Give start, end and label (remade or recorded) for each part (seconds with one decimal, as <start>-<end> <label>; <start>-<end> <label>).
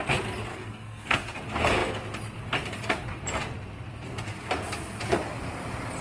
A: 0.0-0.5 recorded; 0.5-1.4 remade; 1.4-6.0 recorded